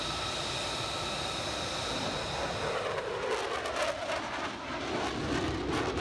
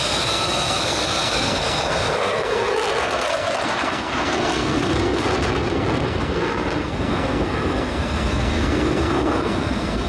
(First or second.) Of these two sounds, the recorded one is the first